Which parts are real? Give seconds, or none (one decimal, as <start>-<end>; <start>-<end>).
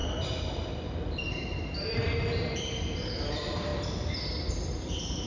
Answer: 3.7-4.5